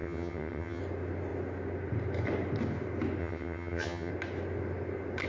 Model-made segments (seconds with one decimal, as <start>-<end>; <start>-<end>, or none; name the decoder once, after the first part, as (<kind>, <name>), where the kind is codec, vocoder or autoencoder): 0.0-0.8 (vocoder, HiFi-GAN); 3.2-4.1